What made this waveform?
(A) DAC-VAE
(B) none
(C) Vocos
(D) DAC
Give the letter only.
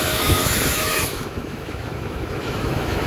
A